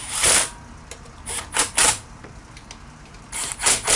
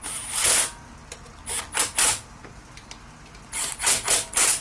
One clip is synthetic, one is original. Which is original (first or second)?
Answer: second